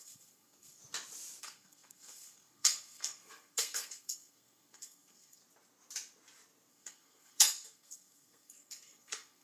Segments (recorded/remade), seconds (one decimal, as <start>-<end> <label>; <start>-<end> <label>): 0.0-0.8 remade; 0.8-1.4 recorded; 1.4-5.4 remade; 5.4-6.7 recorded; 6.7-9.4 remade